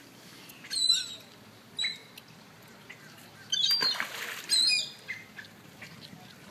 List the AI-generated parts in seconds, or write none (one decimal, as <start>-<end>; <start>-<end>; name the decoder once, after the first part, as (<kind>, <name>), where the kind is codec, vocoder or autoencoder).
none